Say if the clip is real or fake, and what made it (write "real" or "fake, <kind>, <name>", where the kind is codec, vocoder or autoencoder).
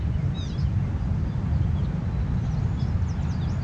real